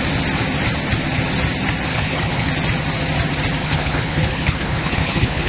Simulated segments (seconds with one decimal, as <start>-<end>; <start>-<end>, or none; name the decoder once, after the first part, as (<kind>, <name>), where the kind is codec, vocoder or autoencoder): 1.9-2.5 (codec, HILCodec); 3.6-5.5